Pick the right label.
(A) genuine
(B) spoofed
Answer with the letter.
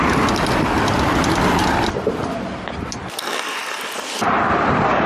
A